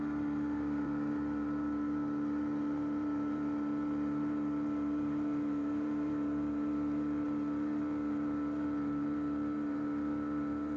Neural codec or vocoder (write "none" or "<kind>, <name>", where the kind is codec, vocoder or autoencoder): vocoder, BigVGAN v2